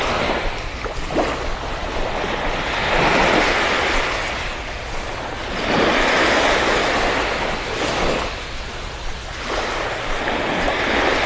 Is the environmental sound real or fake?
real